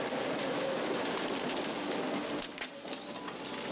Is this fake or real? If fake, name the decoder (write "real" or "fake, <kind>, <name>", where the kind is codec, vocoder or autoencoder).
real